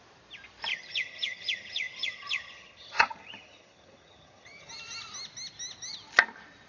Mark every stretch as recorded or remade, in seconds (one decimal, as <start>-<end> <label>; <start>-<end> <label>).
0.0-0.7 recorded; 0.7-4.7 remade; 4.7-6.7 recorded